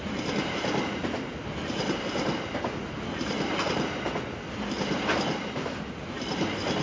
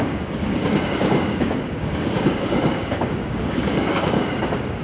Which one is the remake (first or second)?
second